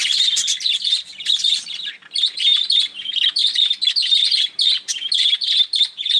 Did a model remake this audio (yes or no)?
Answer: no